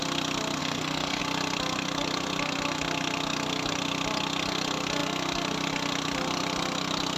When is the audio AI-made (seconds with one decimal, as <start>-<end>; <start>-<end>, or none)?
0.6-1.2